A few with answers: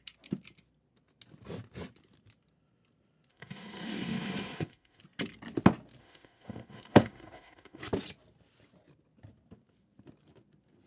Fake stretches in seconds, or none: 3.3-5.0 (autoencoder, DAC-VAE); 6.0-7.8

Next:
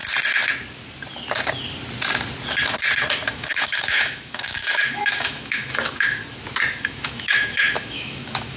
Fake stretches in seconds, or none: 3.3-6.2 (autoencoder, DAC-VAE); 6.8-8.6

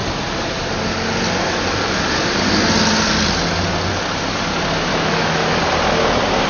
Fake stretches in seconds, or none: 4.9-5.6 (autoencoder, DAC-VAE)

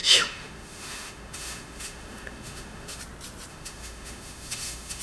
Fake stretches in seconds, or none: 0.0-3.0 (autoencoder, DAC-VAE); 3.5-5.0

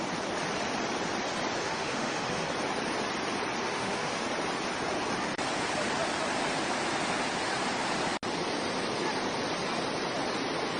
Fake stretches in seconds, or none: 1.6-2.5 (autoencoder, DAC-VAE); 3.6-4.2